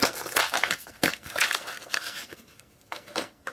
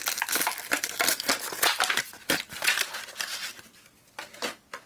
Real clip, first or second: second